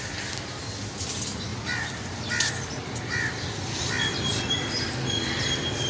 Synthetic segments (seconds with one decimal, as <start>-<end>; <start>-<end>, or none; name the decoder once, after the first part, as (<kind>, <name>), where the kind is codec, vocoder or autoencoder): none